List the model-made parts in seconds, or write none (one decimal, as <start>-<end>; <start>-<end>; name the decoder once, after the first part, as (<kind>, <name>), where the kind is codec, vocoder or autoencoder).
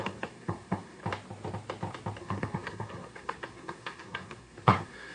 0.0-1.0 (codec, SNAC); 2.2-5.1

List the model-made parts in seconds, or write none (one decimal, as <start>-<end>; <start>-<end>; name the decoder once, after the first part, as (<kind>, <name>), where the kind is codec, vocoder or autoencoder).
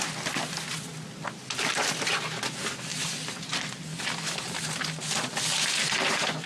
none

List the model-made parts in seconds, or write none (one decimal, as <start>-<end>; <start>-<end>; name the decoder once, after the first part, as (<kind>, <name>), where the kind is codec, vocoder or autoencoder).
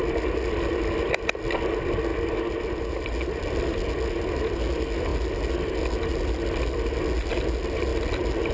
none